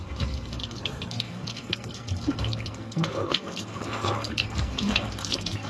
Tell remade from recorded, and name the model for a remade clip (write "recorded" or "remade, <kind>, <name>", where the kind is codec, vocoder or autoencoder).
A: remade, codec, SNAC